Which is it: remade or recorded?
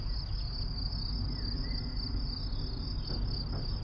recorded